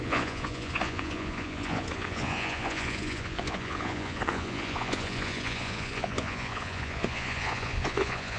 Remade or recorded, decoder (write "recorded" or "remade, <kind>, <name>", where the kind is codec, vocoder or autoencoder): remade, vocoder, Vocos